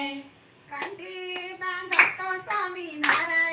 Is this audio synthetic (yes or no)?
yes